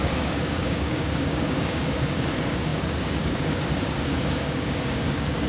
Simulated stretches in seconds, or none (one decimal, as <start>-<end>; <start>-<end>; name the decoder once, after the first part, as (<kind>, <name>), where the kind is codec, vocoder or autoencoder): 0.0-5.5 (codec, DAC)